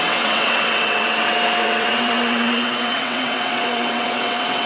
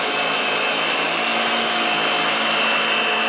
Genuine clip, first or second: second